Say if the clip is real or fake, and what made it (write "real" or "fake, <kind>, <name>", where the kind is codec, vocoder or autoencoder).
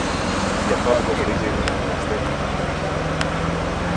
real